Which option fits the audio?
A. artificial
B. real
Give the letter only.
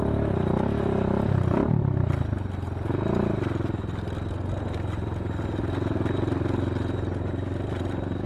B